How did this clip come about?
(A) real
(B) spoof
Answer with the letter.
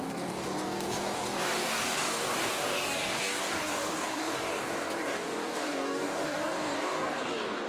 B